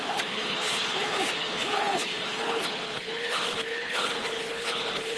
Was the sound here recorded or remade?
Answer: remade